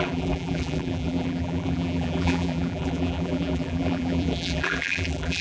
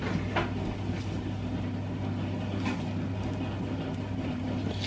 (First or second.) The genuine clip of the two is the second